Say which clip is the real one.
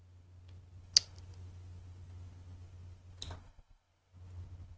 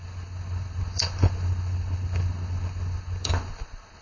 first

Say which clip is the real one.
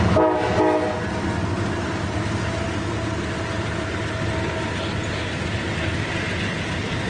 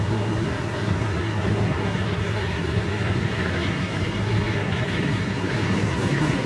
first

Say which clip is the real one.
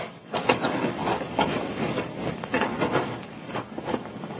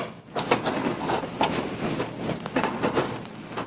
second